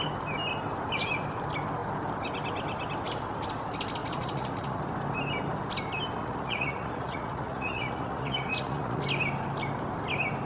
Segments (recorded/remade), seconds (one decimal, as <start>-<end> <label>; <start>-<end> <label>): 0.0-4.0 recorded; 4.0-4.8 remade; 4.8-6.2 recorded; 6.2-9.0 remade; 9.0-10.5 recorded